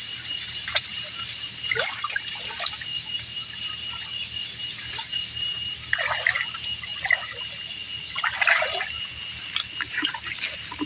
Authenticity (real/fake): real